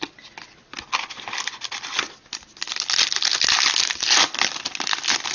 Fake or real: real